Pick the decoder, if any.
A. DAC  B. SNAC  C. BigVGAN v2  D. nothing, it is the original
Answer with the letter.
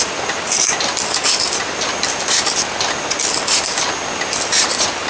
D